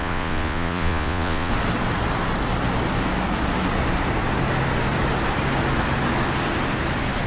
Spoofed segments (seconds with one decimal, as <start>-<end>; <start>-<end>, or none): 0.0-1.5